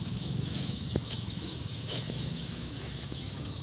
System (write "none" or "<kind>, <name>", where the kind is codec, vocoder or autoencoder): autoencoder, DAC-VAE